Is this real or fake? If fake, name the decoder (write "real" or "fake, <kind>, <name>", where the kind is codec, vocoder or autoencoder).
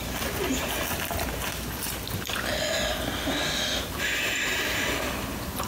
real